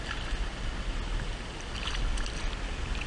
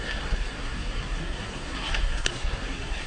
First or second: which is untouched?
first